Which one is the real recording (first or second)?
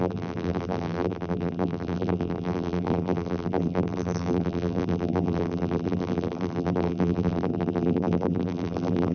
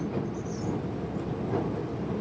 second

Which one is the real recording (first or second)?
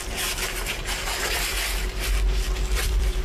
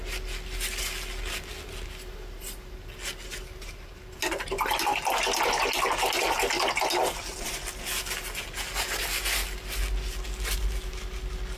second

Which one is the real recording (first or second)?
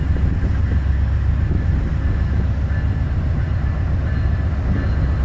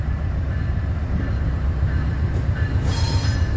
first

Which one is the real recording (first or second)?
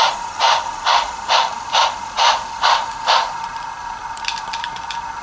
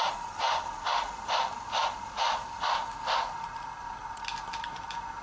second